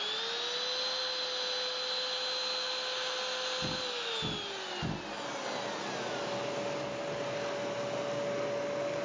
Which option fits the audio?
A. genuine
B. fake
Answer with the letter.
A